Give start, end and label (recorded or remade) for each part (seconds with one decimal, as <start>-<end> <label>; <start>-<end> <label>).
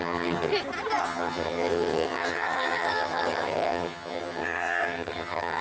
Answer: 0.0-0.5 remade; 0.5-1.0 recorded; 1.0-5.6 remade